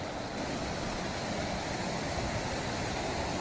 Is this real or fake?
real